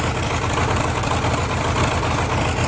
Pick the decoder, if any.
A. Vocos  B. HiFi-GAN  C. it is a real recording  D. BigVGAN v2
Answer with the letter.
C